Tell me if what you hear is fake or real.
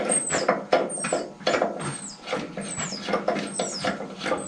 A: fake